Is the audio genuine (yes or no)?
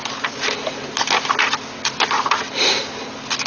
yes